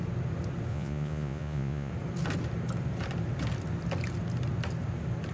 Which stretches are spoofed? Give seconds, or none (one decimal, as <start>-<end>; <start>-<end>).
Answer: 0.7-1.9